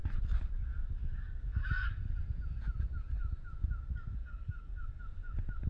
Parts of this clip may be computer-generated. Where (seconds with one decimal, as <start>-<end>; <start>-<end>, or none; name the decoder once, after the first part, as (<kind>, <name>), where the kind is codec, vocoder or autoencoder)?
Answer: 1.5-2.0 (codec, DAC); 4.2-5.0